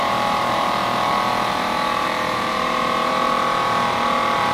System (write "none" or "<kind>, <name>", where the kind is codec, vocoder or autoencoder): vocoder, BigVGAN v2